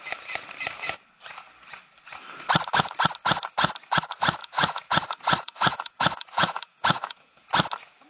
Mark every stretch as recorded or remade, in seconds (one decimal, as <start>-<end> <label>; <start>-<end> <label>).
0.0-4.4 recorded; 4.4-7.5 remade; 7.5-8.1 recorded